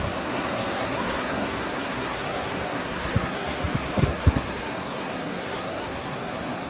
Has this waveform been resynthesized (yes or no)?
yes